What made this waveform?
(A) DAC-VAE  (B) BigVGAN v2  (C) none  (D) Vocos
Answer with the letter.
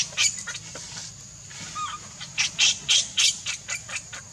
C